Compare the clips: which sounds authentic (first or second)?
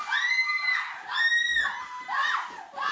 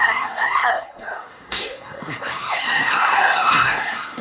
first